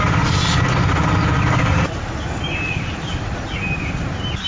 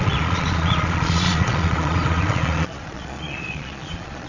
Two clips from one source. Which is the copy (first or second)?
second